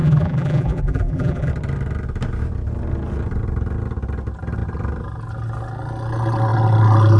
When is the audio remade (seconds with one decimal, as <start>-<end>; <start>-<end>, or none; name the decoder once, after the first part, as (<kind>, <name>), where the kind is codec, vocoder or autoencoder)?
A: 0.0-1.5 (vocoder, BigVGAN v2)